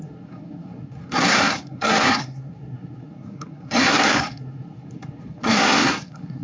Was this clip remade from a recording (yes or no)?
yes